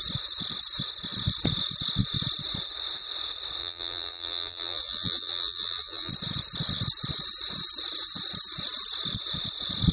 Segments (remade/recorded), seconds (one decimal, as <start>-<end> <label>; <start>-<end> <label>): 0.0-3.6 recorded; 3.6-6.1 remade; 6.1-9.9 recorded